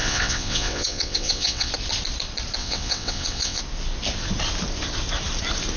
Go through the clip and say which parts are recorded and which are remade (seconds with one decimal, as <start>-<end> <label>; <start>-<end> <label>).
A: 0.0-1.7 remade; 1.7-2.6 recorded; 2.6-3.6 remade; 3.6-5.8 recorded